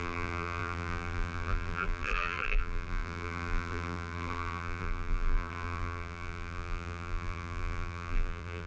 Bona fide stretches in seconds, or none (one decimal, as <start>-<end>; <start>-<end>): none

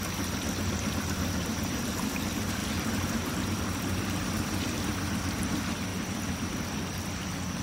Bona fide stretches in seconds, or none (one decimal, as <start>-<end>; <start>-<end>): 0.0-2.6; 4.8-5.9; 6.5-7.6

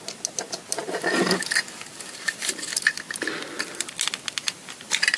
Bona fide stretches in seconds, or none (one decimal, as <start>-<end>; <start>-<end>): 0.0-0.8; 3.9-4.4

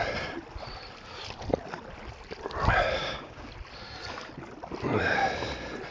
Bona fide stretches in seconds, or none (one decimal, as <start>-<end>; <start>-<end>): 0.0-3.0; 3.5-5.9

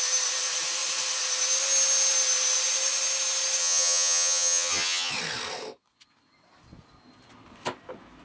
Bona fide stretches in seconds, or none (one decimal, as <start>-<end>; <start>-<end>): 0.0-3.6; 5.1-8.2

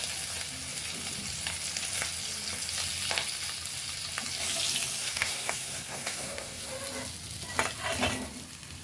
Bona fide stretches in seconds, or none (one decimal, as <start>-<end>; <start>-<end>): 0.0-5.0; 6.7-8.8